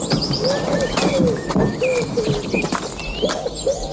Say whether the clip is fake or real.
real